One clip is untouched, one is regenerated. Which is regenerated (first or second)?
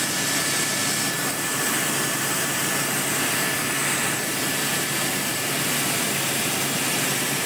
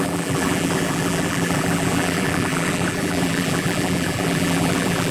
second